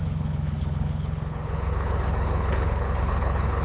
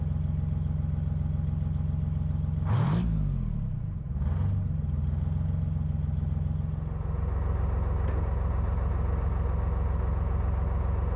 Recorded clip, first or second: second